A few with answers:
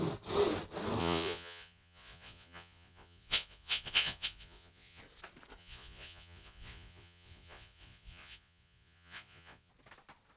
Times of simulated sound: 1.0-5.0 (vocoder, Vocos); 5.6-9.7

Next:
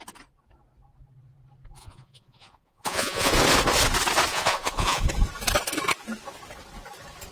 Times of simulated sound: 1.8-3.3 (vocoder, Vocos); 4.3-5.0

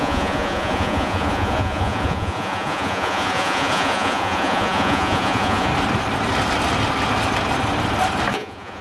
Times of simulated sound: 0.0-5.7 (vocoder, Vocos); 8.3-8.8

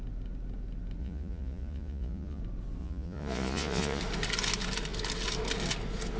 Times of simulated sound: 1.0-2.4 (vocoder, Vocos); 2.8-4.0

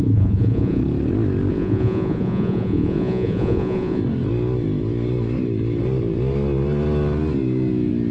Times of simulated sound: 0.0-0.8 (vocoder, Vocos); 1.5-4.0

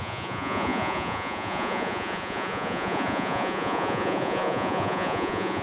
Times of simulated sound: 0.0-5.6 (vocoder, Vocos)